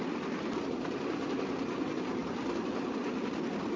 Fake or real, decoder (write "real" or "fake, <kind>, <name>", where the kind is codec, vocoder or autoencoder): fake, vocoder, BigVGAN v2